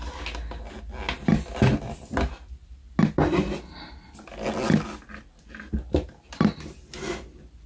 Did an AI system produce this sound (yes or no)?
no